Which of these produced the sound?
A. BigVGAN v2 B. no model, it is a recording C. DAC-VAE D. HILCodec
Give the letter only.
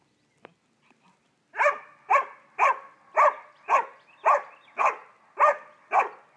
B